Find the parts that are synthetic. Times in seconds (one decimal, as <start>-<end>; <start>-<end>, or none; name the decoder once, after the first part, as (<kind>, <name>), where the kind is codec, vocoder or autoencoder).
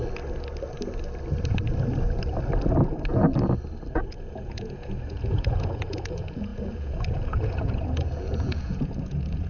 3.9-9.5 (vocoder, Vocos)